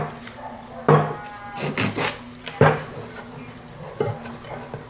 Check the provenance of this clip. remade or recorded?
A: recorded